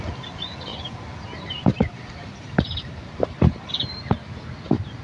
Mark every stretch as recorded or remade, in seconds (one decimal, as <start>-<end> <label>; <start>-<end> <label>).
0.0-0.7 recorded; 0.7-3.7 remade; 3.7-5.0 recorded